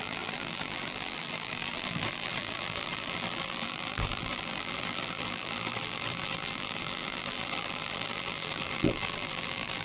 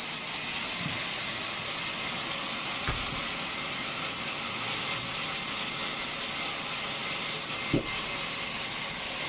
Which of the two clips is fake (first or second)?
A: first